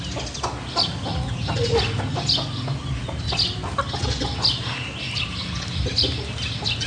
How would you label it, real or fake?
real